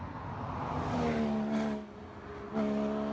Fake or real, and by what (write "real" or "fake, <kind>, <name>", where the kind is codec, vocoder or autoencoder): real